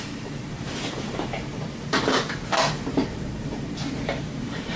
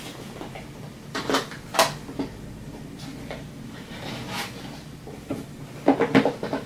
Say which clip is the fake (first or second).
first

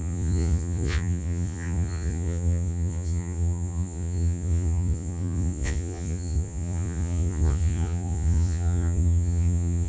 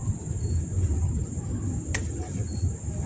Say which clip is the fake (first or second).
first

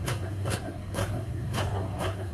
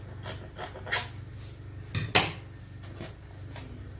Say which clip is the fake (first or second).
first